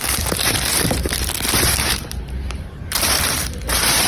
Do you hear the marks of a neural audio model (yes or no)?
yes